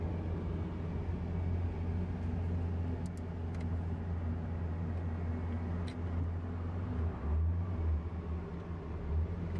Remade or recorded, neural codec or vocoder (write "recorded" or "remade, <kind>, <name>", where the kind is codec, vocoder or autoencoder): recorded